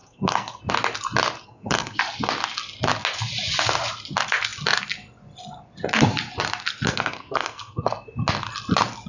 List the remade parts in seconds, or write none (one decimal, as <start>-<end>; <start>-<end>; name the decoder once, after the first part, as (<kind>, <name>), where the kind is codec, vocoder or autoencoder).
0.0-0.6 (codec, SNAC); 1.4-2.0; 6.9-7.9